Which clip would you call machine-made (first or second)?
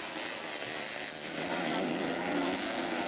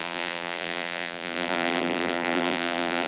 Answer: second